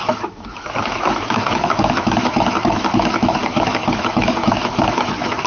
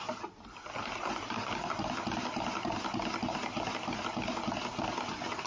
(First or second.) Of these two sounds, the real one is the second